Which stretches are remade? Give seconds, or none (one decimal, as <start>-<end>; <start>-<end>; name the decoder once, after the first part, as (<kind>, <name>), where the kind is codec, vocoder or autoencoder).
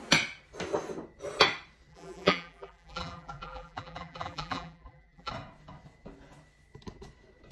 1.9-5.3 (vocoder, BigVGAN v2)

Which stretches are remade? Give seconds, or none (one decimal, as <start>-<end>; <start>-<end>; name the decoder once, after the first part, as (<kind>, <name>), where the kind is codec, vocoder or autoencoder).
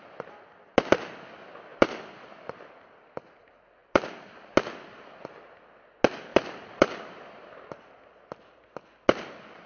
1.7-3.4 (vocoder, BigVGAN v2); 3.8-4.4; 6.3-7.1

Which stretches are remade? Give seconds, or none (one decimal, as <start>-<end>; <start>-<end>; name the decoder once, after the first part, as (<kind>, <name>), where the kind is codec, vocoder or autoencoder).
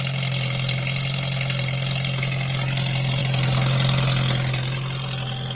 none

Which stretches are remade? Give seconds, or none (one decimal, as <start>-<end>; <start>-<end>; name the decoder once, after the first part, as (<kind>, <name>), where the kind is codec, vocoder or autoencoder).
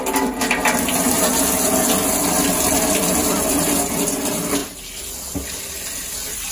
0.0-0.6 (vocoder, BigVGAN v2); 2.3-6.5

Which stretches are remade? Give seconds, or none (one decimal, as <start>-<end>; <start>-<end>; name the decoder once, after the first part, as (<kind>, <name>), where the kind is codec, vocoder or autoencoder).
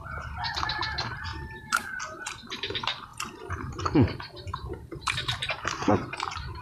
1.3-2.0 (vocoder, BigVGAN v2); 3.1-5.9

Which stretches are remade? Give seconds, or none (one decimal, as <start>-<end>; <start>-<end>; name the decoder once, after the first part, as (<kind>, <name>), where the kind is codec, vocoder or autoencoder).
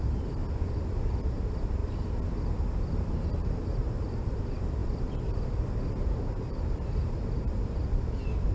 0.0-0.4 (vocoder, BigVGAN v2); 1.3-1.8; 3.1-8.5